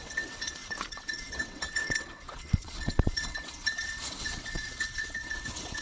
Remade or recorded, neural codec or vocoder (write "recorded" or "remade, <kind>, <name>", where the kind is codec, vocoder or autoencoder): remade, vocoder, WaveNeXt